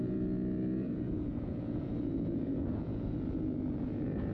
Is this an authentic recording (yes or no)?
no